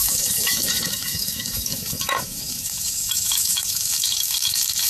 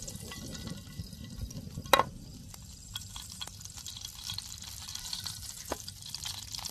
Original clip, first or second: second